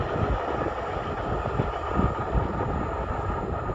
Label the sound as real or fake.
real